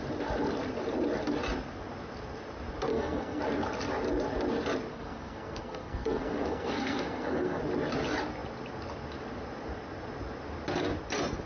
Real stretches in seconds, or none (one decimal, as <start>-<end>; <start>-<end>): 0.0-2.9; 3.4-4.9; 7.6-11.5